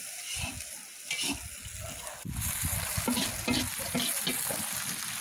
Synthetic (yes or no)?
no